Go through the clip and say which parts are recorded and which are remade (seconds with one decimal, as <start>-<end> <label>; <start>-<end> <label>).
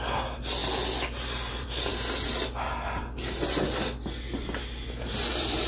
0.0-0.6 remade; 0.6-1.5 recorded; 1.5-1.9 remade; 1.9-5.3 recorded; 5.3-5.7 remade